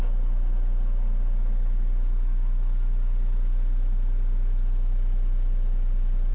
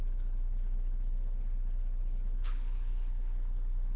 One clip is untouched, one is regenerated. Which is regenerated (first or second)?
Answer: second